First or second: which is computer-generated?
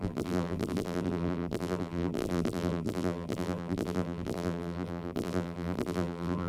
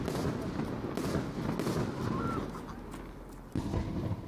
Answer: first